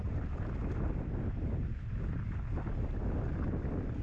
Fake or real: real